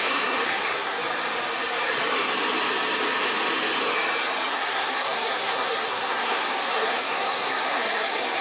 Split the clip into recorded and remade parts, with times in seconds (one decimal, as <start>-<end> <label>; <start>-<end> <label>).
0.0-1.0 remade; 1.0-4.5 recorded; 4.5-8.4 remade